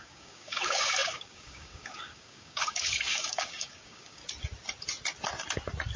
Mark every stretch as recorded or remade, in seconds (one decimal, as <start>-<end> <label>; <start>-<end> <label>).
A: 0.0-4.2 remade; 4.2-6.0 recorded